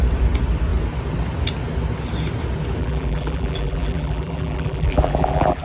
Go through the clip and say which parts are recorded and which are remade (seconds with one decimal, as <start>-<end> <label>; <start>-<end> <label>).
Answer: 0.0-2.8 recorded; 2.8-5.6 remade